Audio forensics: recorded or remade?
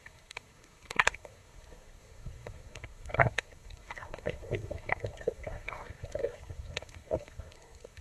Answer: remade